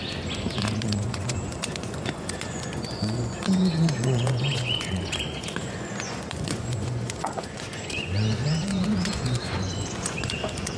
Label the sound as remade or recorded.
remade